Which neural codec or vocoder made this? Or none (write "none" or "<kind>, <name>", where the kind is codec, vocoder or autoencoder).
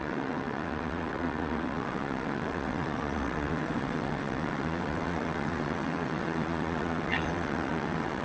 vocoder, WaveNeXt